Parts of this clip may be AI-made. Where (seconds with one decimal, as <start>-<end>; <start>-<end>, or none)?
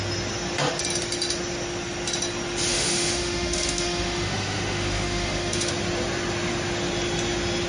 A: 2.7-5.7